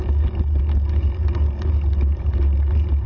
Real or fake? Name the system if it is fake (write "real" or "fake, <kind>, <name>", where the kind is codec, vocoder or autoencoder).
real